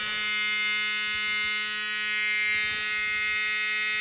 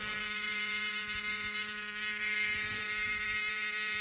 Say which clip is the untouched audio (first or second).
first